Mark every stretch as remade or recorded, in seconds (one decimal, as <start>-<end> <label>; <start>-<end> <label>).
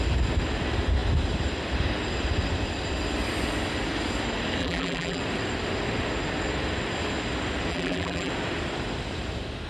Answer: 0.0-4.6 recorded; 4.6-5.2 remade; 5.2-7.7 recorded; 7.7-8.3 remade; 8.3-9.7 recorded